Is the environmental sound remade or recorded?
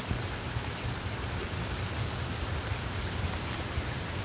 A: recorded